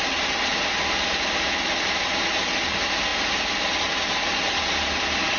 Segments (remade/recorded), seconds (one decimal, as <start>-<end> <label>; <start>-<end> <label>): 0.0-5.4 recorded